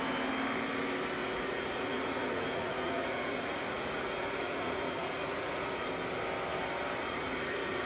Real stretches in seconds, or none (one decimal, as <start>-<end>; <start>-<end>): 0.0-1.2; 5.9-7.0